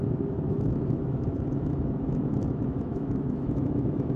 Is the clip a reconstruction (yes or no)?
yes